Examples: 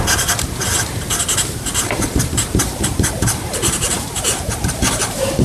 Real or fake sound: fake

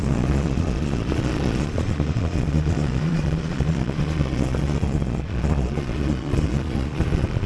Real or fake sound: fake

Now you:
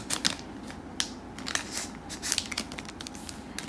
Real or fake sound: real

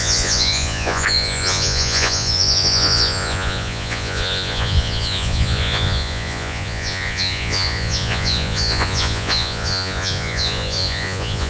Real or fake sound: fake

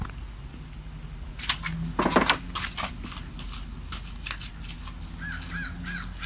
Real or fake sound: real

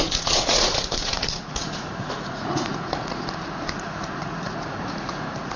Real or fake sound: fake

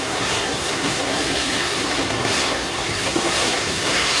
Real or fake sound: fake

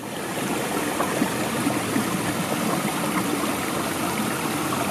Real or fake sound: fake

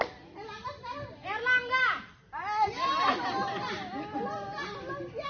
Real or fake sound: real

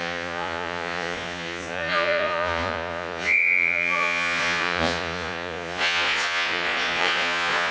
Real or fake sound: fake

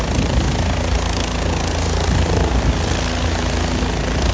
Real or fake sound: real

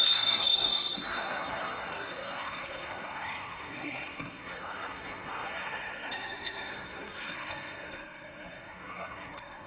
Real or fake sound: fake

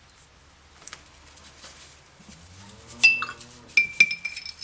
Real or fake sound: real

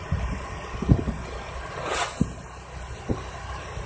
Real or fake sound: real